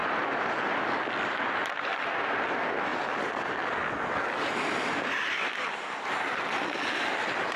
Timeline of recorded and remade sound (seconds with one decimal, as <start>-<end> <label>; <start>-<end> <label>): 0.0-7.6 recorded